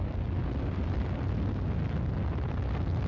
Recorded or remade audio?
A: recorded